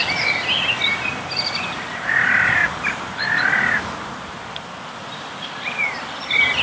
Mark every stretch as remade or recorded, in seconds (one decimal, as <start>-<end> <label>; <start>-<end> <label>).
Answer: 0.0-0.8 recorded; 0.8-2.6 remade; 2.6-4.5 recorded; 4.5-6.6 remade